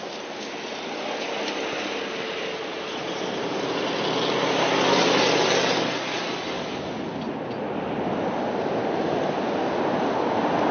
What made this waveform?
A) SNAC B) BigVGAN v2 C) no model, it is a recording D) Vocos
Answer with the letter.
C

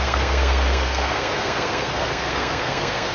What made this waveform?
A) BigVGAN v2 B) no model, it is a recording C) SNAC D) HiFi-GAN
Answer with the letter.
C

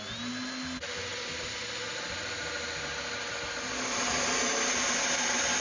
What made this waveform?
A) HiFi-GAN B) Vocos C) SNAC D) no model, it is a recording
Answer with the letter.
D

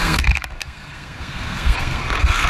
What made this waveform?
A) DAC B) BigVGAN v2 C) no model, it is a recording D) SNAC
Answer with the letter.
D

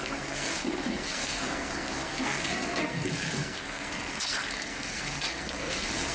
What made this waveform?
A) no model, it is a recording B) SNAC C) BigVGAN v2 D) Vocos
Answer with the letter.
B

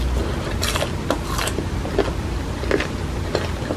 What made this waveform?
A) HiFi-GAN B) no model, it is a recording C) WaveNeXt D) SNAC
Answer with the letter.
B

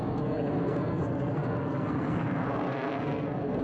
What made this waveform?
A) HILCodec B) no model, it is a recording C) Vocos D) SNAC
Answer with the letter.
D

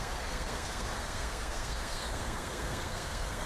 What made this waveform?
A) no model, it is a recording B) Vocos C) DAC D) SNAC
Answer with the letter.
D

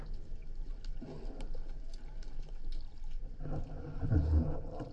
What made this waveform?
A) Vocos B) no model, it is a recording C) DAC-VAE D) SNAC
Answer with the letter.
B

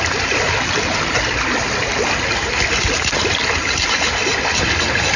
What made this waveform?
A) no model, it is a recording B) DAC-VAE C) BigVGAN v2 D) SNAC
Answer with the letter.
A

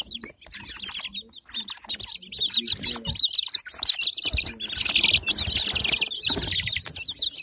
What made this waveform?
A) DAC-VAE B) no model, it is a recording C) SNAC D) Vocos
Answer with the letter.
B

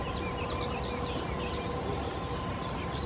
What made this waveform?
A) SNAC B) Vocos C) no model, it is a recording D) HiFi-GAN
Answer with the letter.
C